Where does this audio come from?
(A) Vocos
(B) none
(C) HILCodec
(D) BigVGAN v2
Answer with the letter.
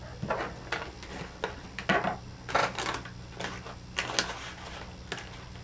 B